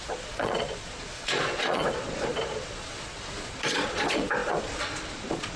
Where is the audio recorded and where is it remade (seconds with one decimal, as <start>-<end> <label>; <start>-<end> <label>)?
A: 0.0-5.6 remade